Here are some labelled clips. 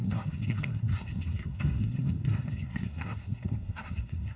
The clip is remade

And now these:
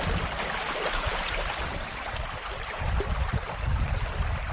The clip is recorded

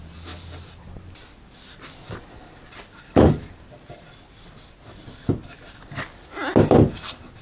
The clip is recorded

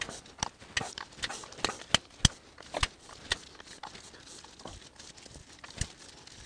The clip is recorded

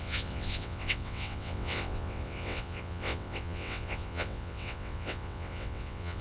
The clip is remade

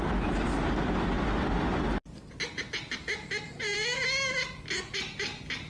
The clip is recorded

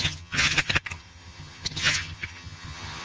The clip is remade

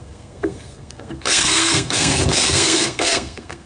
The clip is remade